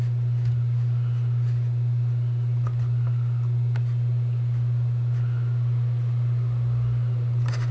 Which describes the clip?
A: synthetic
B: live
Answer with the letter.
B